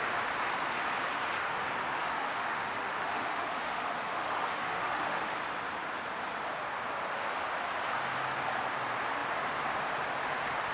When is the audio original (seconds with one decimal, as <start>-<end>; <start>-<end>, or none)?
0.0-1.9; 5.3-10.7